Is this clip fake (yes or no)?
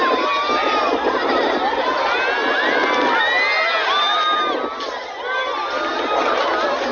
no